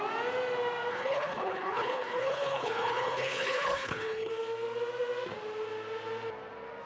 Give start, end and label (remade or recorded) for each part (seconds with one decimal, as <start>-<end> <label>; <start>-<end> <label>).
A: 0.0-0.9 recorded; 0.9-4.3 remade; 4.3-6.9 recorded